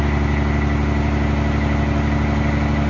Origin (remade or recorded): recorded